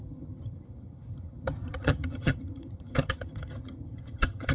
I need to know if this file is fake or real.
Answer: fake